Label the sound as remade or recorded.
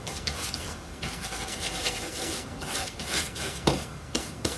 remade